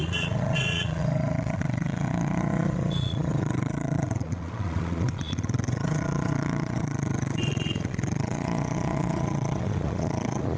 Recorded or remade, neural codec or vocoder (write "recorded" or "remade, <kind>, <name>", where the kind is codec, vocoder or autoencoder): remade, vocoder, Vocos